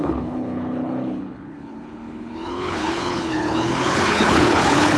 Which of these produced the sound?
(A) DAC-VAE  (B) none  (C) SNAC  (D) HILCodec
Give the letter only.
D